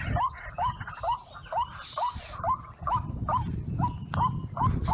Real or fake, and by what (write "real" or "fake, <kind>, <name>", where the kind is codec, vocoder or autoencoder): real